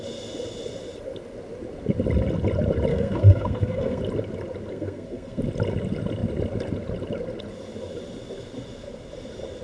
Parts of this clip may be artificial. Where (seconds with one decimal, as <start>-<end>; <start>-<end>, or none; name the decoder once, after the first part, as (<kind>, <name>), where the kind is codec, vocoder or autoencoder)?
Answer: 2.9-4.0 (codec, SNAC); 4.7-5.4